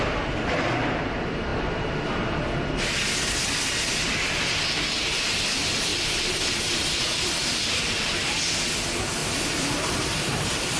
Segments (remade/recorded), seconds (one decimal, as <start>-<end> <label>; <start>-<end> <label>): 0.0-5.9 recorded; 5.9-8.4 remade; 8.4-9.2 recorded; 9.2-10.4 remade; 10.4-10.8 recorded